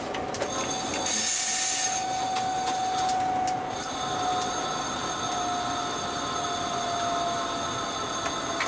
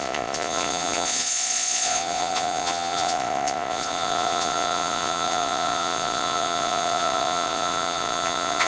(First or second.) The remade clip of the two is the second